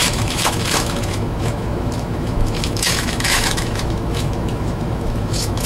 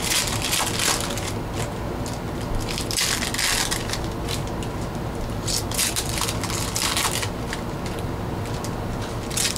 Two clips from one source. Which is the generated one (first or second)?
first